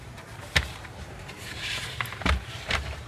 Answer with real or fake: fake